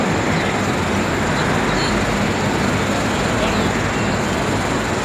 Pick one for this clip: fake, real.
real